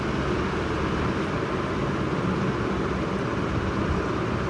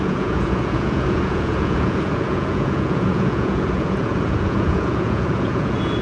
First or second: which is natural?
first